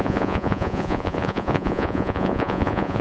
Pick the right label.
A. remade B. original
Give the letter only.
A